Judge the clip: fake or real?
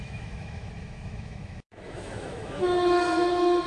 fake